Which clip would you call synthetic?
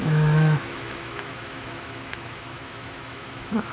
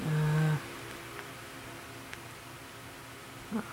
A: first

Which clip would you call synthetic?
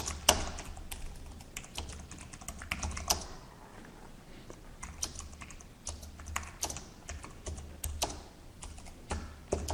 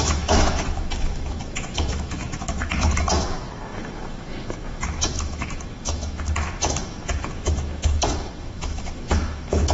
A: second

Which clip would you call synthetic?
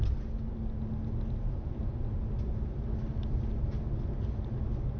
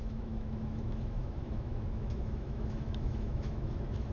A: second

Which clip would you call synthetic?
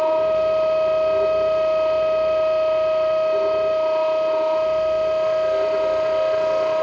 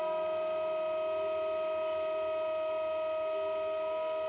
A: first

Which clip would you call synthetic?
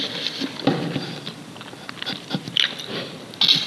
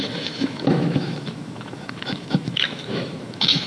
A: second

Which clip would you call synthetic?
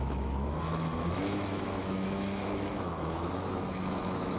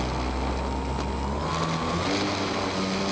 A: first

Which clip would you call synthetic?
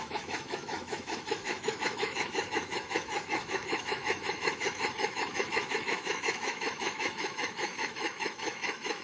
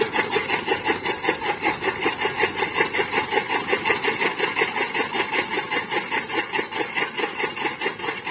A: first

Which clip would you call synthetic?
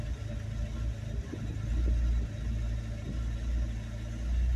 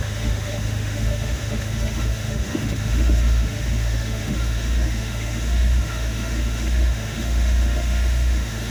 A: second